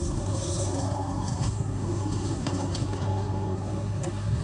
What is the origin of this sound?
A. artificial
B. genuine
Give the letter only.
A